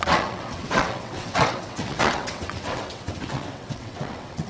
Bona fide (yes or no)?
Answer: no